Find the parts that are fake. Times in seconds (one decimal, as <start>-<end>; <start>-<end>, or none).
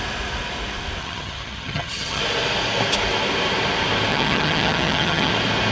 1.0-2.2; 4.1-5.3